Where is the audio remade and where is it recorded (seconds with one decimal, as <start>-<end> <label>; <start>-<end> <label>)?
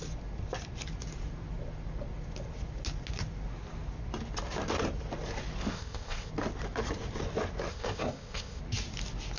0.0-5.7 recorded; 5.7-6.3 remade; 6.3-7.7 recorded; 7.7-8.6 remade; 8.6-9.4 recorded